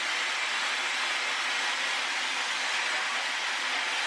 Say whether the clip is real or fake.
real